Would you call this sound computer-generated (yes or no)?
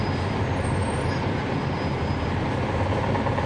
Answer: no